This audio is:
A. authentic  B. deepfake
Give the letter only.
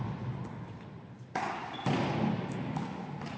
A